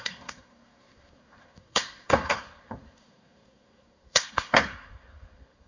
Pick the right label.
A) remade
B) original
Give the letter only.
A